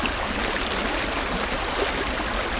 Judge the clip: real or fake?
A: real